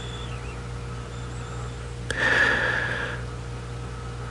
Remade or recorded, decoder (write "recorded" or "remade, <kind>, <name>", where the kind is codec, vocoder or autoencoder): recorded